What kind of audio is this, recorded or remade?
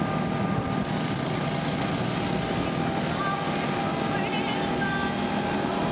recorded